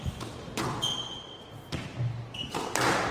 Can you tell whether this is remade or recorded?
recorded